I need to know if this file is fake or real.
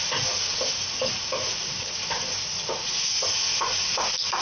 real